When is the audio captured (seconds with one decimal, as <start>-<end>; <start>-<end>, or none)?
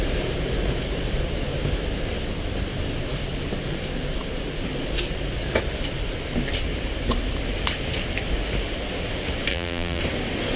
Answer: 0.0-9.5; 10.0-10.6